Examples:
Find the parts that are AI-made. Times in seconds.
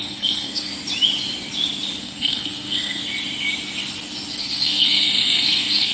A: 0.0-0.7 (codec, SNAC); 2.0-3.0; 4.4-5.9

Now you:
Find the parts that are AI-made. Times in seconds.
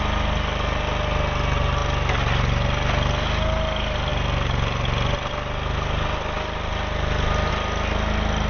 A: none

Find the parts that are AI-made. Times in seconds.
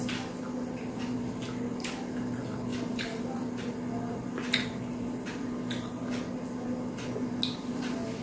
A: none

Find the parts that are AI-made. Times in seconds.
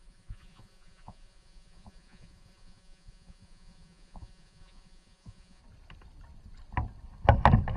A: 0.0-5.6 (vocoder, Vocos)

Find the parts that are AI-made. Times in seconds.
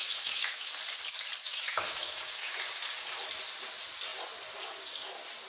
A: 0.0-0.7 (autoencoder, DAC-VAE); 1.4-2.6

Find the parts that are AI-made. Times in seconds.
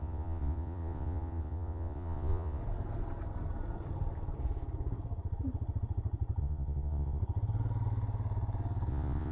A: 0.0-2.6 (vocoder, Vocos); 6.4-7.2; 8.9-9.3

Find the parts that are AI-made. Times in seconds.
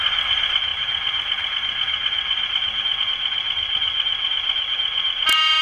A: none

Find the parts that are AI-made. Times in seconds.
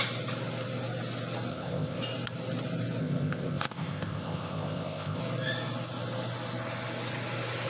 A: 1.5-2.0 (codec, ZipCodec); 3.0-5.2